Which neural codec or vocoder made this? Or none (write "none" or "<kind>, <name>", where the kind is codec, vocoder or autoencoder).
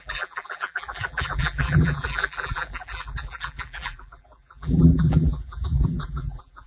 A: vocoder, BigVGAN v2